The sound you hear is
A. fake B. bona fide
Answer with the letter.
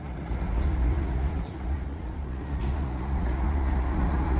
A